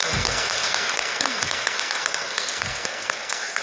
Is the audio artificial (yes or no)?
yes